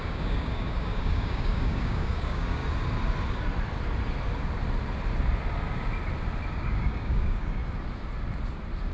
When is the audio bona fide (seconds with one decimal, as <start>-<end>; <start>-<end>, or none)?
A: 2.6-6.5; 7.6-8.9